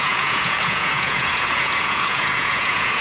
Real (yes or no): no